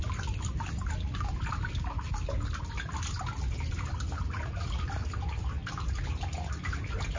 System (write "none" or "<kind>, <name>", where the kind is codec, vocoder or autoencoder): none